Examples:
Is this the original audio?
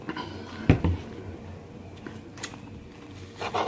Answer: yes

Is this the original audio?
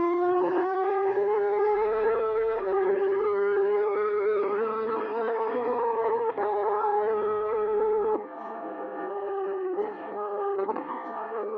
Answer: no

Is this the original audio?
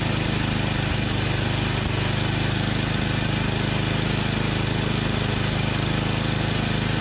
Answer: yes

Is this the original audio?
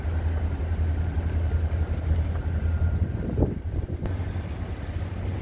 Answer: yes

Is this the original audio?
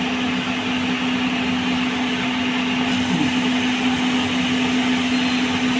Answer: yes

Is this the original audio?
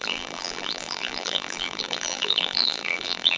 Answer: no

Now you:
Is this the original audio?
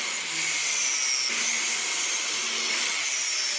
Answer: yes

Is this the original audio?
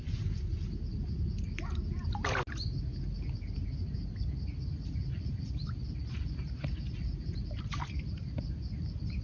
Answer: yes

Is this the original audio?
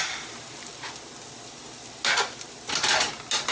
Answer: yes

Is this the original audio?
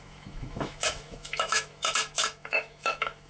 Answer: no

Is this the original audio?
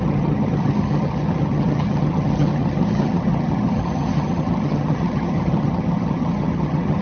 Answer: no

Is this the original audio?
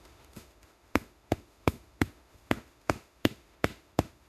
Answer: no